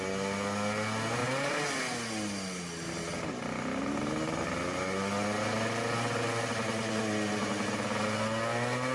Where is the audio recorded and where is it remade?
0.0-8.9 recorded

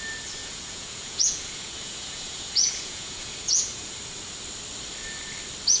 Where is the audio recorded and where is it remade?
0.0-0.4 recorded; 0.4-3.9 remade; 3.9-5.8 recorded

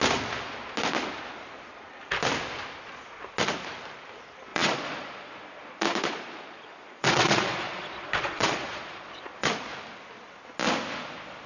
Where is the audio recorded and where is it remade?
0.0-4.5 recorded; 4.5-9.5 remade; 9.5-11.5 recorded

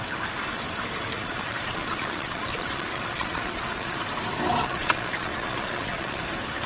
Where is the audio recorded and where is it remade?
0.0-1.1 recorded; 1.1-4.0 remade; 4.0-4.6 recorded; 4.6-6.2 remade; 6.2-6.7 recorded

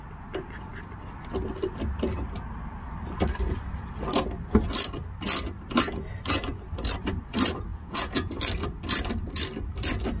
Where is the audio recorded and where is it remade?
0.0-7.7 recorded; 7.7-8.3 remade; 8.3-10.2 recorded

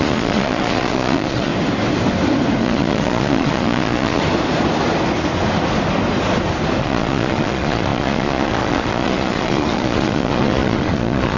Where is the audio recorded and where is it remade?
0.0-1.5 remade; 1.5-2.6 recorded; 2.6-4.2 remade; 4.2-6.8 recorded; 6.8-11.4 remade